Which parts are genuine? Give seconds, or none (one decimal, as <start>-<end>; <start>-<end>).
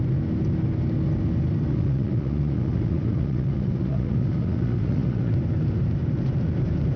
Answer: 0.0-1.7; 5.3-7.0